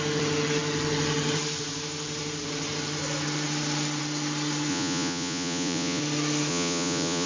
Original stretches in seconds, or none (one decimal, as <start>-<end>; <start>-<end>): 0.0-4.7; 6.0-6.5